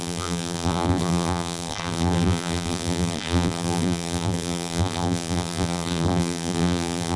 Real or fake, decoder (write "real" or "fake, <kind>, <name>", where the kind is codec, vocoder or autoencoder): fake, vocoder, BigVGAN v2